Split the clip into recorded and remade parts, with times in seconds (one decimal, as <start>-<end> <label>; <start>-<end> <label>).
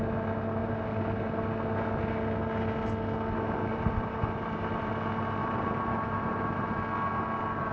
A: 0.0-0.6 recorded; 0.6-1.3 remade; 1.3-3.7 recorded; 3.7-4.9 remade; 4.9-5.4 recorded; 5.4-6.8 remade; 6.8-7.7 recorded